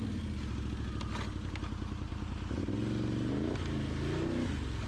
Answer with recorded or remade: recorded